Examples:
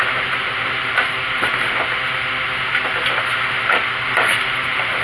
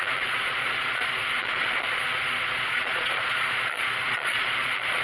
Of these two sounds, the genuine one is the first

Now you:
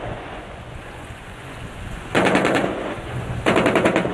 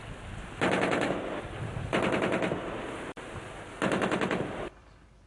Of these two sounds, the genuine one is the second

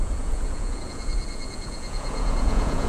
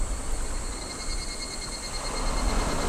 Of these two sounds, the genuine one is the second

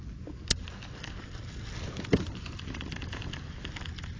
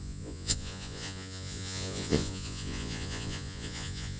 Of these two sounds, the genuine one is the first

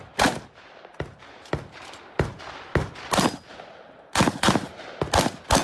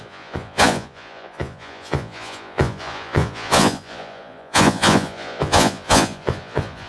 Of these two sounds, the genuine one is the first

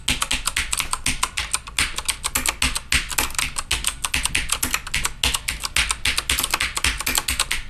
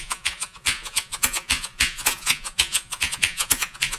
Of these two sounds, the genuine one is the first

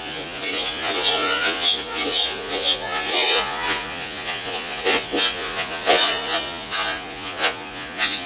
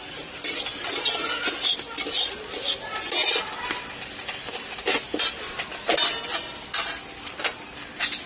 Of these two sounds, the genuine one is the second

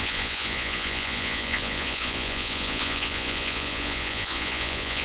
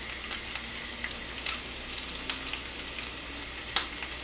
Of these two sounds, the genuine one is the second